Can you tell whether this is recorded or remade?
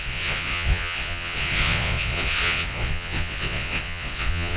remade